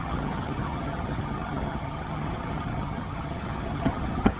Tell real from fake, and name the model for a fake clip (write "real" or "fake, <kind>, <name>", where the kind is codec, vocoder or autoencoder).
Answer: fake, vocoder, HiFi-GAN